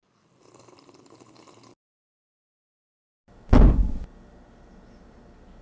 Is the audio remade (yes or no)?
no